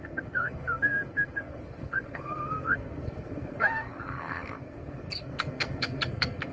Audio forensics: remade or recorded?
remade